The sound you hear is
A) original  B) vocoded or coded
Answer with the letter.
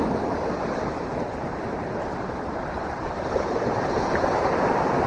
B